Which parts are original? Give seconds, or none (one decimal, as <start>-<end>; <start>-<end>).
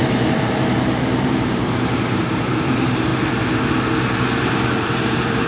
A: 3.1-4.8